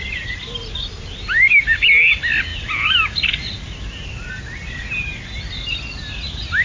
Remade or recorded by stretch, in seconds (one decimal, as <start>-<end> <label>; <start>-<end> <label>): 0.0-6.6 recorded